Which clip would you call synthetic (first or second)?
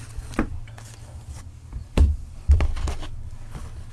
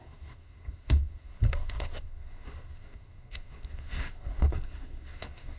second